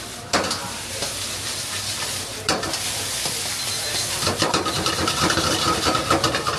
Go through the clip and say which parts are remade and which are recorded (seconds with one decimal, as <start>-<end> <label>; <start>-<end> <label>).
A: 0.0-6.6 recorded